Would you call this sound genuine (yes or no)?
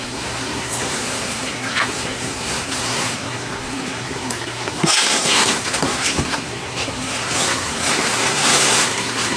no